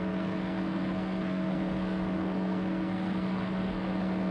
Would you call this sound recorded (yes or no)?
no